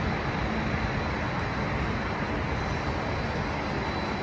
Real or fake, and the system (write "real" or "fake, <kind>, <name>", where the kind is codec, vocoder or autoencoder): real